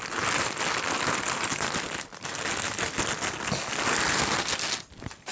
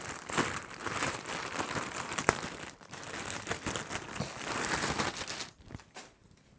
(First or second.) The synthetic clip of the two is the second